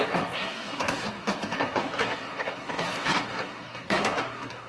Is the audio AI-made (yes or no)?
yes